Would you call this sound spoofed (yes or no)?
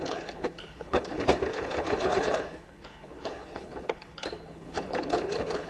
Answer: yes